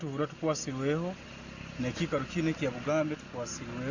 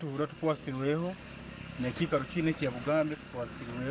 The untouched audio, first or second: first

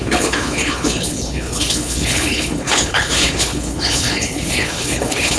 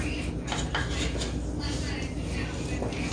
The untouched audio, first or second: second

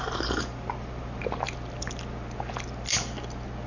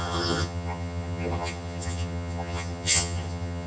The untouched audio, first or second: first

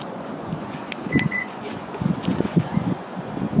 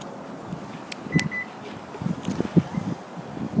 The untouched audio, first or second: second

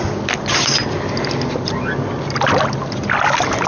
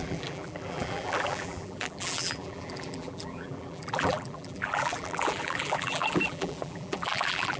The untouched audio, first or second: first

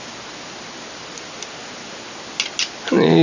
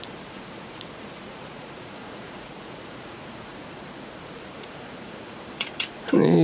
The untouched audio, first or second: first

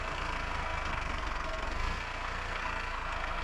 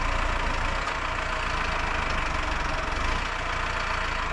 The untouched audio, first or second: second